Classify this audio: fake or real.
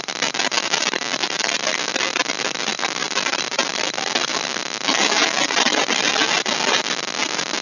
real